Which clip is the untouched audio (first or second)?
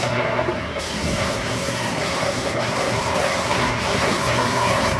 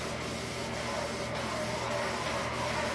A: second